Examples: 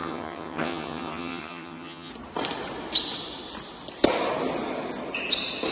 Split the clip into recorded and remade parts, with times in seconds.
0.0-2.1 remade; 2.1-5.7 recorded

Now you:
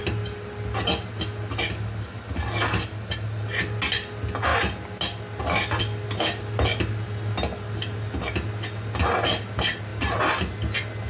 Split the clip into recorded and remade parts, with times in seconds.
0.0-11.1 recorded

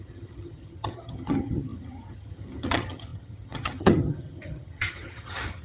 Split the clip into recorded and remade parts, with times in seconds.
0.0-5.6 remade

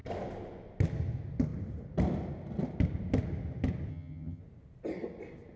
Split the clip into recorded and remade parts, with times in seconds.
0.0-3.9 recorded; 3.9-4.4 remade; 4.4-5.6 recorded

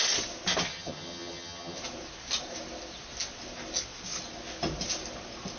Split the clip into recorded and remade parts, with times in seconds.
0.0-0.7 recorded; 0.7-1.8 remade; 1.8-5.6 recorded

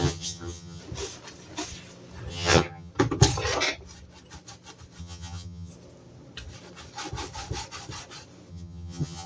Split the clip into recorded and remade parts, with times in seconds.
0.0-0.8 remade; 0.8-2.3 recorded; 2.3-2.9 remade; 2.9-5.0 recorded; 5.0-5.7 remade; 5.7-8.5 recorded; 8.5-9.3 remade

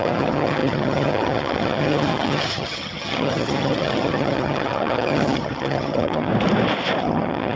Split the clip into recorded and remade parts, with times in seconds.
0.0-6.3 remade; 6.3-7.0 recorded; 7.0-7.6 remade